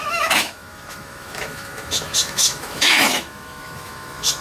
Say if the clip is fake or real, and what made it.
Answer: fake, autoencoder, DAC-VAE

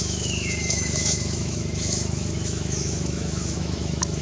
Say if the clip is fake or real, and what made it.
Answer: fake, autoencoder, DAC-VAE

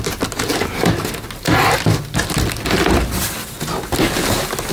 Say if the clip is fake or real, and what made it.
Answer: real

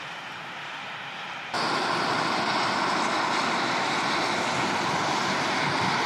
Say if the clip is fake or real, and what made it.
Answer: real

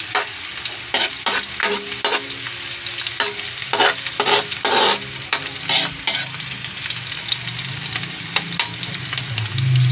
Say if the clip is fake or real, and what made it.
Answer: real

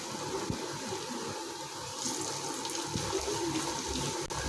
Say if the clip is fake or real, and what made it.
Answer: real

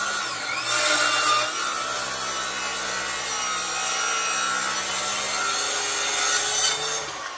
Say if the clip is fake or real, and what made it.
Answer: real